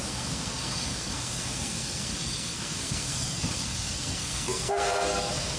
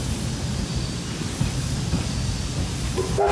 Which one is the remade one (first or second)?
first